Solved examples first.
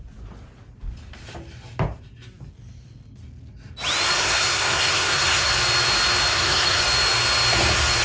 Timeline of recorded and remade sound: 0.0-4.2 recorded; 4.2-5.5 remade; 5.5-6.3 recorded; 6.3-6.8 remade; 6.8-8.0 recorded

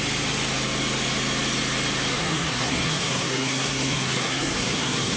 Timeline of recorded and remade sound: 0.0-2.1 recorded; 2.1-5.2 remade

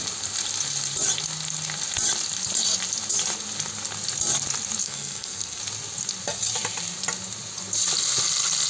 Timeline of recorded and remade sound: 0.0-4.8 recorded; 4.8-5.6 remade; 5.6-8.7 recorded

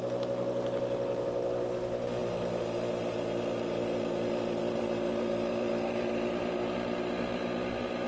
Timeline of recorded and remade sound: 0.0-8.1 recorded

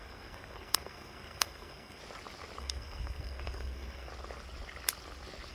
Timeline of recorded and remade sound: 0.0-2.0 remade; 2.0-2.6 recorded; 2.6-4.1 remade; 4.1-5.5 recorded

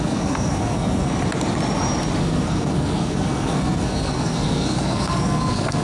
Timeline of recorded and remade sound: 0.0-1.1 remade; 1.1-2.2 recorded; 2.2-5.8 remade

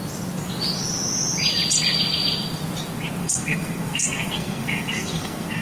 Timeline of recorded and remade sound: 0.0-3.2 recorded; 3.2-5.6 remade